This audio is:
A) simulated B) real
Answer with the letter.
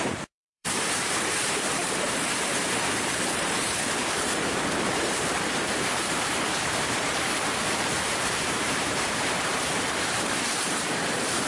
A